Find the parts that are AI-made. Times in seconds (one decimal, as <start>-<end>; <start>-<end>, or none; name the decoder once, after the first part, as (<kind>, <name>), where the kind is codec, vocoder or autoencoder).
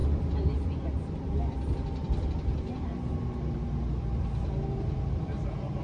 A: none